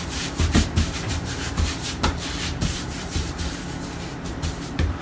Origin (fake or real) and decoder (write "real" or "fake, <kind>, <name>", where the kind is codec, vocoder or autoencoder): fake, vocoder, BigVGAN v2